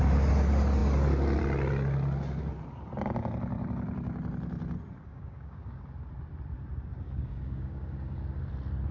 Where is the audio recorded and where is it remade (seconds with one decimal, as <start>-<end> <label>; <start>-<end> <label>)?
0.0-5.1 recorded; 5.1-5.8 remade; 5.8-6.9 recorded; 6.9-8.5 remade; 8.5-8.9 recorded